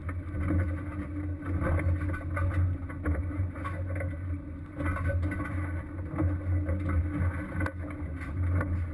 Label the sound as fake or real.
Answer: real